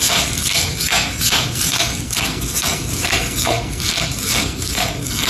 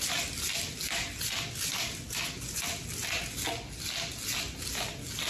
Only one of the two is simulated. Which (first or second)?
first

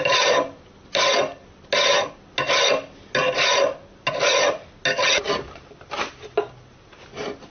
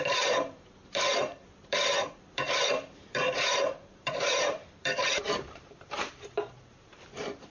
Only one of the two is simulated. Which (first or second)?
second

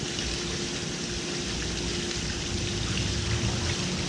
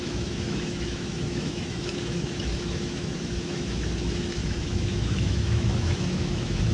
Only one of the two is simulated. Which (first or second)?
second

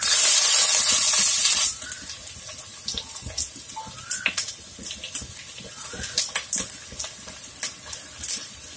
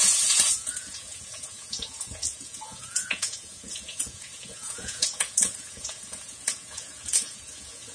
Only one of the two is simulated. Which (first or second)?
second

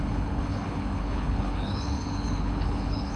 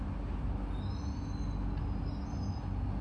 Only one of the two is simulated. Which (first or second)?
first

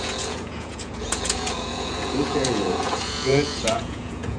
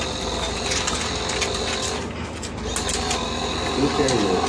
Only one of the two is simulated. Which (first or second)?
first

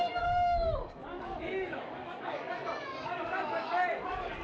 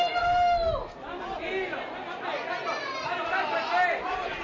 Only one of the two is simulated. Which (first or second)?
first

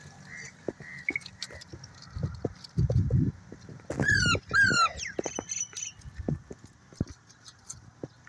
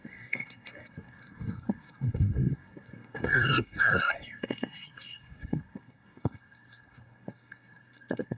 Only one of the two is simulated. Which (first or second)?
second